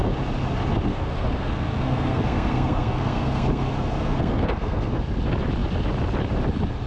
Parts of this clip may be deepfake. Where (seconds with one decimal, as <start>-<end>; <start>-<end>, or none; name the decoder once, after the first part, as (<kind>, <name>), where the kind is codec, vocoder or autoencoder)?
0.9-5.0 (codec, SNAC)

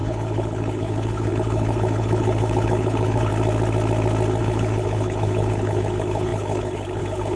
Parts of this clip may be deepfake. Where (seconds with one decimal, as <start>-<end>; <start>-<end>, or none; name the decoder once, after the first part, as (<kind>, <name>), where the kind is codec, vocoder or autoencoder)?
0.0-3.3 (codec, HILCodec); 4.4-7.4

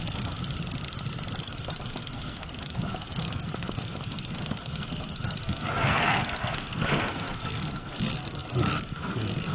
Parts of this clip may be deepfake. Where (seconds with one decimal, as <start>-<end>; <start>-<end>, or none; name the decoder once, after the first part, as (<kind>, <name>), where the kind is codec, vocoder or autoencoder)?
0.0-0.4 (codec, SNAC); 1.4-9.5

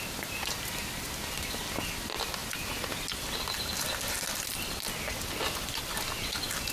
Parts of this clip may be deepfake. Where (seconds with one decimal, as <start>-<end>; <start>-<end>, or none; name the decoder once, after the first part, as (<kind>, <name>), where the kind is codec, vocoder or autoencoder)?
none

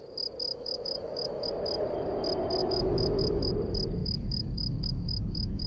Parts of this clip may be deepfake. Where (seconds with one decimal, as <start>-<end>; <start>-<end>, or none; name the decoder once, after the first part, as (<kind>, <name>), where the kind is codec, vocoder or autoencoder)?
0.5-1.5 (autoencoder, DAC-VAE); 2.6-3.5; 4.0-5.7

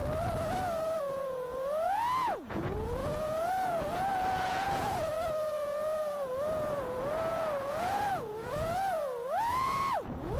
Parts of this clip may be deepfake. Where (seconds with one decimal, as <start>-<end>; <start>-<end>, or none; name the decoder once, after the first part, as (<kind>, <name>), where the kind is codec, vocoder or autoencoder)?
1.0-10.4 (vocoder, Vocos)

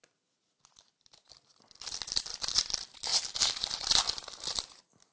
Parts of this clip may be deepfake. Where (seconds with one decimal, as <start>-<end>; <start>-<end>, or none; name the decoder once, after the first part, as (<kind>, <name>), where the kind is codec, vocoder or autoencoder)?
none